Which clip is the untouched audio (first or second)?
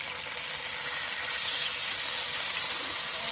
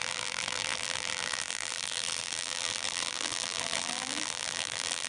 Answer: first